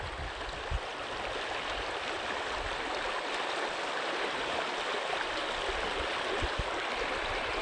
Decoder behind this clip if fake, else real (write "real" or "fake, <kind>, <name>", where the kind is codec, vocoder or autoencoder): real